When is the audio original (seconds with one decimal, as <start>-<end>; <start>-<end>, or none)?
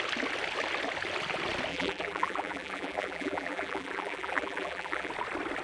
0.0-1.7; 5.1-5.6